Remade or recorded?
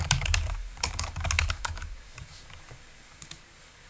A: remade